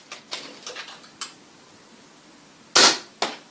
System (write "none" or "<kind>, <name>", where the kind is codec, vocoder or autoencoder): none